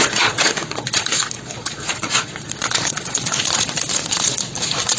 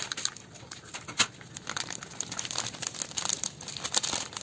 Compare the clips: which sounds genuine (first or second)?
second